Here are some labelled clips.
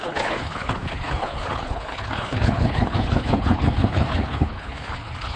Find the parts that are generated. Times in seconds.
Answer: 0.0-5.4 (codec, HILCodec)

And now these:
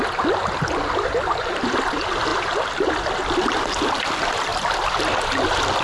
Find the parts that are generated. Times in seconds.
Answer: 0.4-1.8 (vocoder, BigVGAN v2); 2.3-3.2; 4.5-5.3

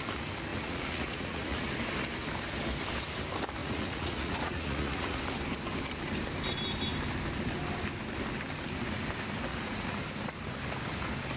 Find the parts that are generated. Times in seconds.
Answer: 0.5-1.7 (vocoder, Vocos); 3.6-5.2; 9.5-10.0

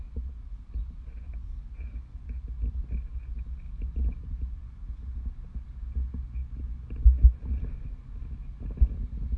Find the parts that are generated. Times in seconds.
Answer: none

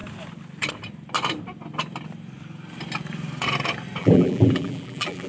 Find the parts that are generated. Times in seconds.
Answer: 4.0-5.3 (vocoder, BigVGAN v2)